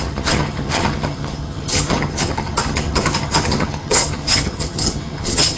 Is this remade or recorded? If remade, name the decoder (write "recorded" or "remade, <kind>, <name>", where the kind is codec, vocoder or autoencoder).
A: remade, vocoder, HiFi-GAN